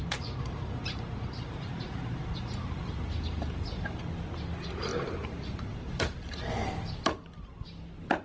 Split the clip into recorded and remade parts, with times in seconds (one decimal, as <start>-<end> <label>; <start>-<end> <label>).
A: 0.0-4.0 remade; 4.0-4.9 recorded; 4.9-6.7 remade; 6.7-8.2 recorded